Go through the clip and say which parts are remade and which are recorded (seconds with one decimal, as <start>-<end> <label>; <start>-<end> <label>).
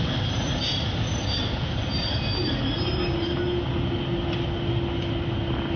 0.0-5.8 recorded